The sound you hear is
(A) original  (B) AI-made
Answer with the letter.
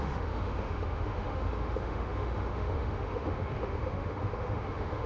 B